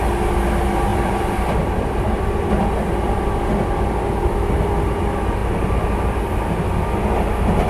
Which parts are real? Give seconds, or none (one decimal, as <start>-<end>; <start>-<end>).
0.0-0.9; 3.2-5.4; 6.1-7.7

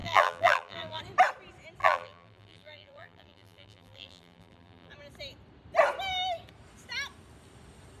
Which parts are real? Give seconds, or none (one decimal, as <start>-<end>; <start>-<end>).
1.0-1.8; 4.9-8.0